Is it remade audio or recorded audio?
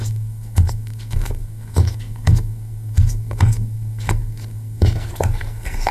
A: remade